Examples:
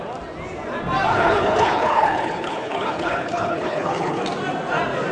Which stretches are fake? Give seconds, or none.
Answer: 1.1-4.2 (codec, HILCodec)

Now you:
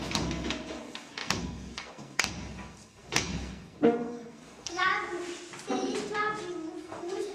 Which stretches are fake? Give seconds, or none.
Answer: 0.0-4.9 (codec, SNAC); 6.8-7.3

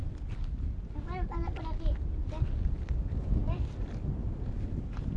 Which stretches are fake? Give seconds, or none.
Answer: none

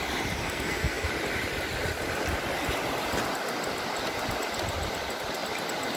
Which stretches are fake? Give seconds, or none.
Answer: 0.4-1.1 (codec, SNAC)